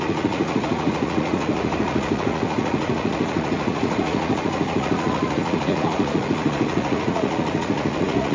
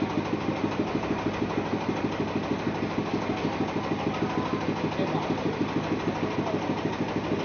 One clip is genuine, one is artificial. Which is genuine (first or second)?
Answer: second